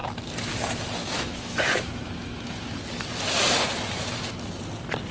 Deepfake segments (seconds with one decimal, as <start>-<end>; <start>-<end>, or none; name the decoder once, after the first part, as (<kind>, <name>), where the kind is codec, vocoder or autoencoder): 1.0-2.8 (autoencoder, DAC-VAE)